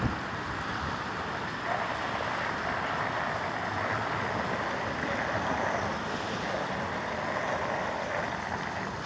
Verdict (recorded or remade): recorded